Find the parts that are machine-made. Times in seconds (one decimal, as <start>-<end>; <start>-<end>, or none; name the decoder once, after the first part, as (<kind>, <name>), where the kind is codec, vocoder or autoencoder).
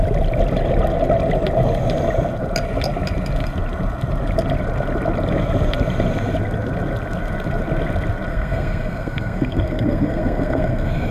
8.3-11.1 (codec, SNAC)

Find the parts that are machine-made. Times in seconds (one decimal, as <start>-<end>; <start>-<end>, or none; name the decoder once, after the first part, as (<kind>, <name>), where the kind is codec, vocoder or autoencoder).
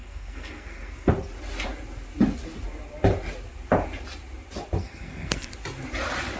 0.0-1.1 (codec, SNAC); 4.8-5.5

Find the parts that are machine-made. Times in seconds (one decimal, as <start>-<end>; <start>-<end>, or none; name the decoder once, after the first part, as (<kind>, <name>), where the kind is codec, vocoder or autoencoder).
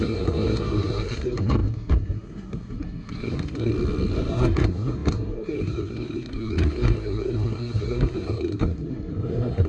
0.0-3.7 (codec, SNAC); 4.3-9.7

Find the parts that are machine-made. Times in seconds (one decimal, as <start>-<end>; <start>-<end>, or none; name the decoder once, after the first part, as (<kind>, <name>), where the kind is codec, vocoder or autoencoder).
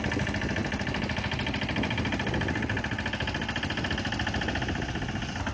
none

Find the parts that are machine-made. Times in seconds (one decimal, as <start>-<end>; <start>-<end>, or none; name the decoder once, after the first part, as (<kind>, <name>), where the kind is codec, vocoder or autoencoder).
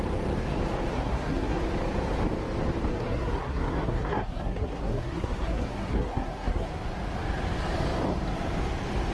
0.9-1.6 (codec, SNAC); 2.9-6.7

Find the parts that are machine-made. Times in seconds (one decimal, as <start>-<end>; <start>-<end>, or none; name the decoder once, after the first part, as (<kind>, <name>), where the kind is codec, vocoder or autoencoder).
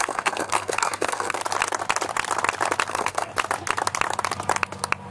0.0-1.4 (codec, SNAC); 2.9-3.3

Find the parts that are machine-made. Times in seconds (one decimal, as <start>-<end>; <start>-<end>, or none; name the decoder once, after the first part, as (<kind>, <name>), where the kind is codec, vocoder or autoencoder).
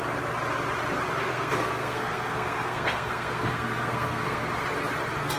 1.3-4.5 (codec, SNAC)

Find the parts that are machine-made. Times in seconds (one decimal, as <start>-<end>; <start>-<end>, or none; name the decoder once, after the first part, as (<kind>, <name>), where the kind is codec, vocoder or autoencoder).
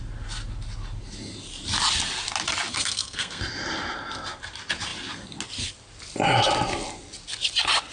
2.7-3.4 (codec, SNAC)